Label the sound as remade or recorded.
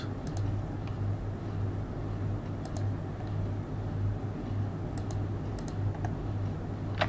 recorded